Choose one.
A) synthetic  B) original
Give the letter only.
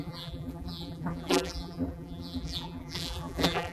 A